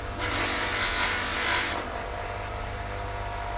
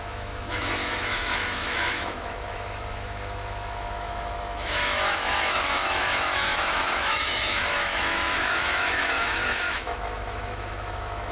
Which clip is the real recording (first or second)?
first